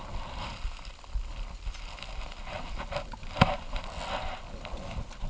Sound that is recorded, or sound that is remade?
recorded